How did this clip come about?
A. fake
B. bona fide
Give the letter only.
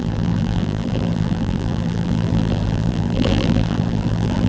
A